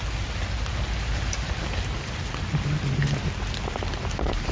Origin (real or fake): real